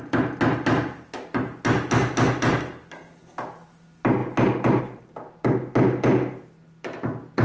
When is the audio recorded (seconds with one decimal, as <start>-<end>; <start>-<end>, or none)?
0.0-7.4